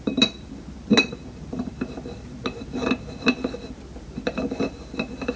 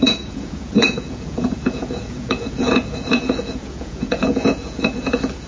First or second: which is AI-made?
second